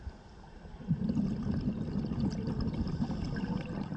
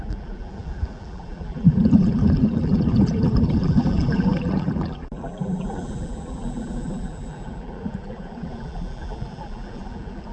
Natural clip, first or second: first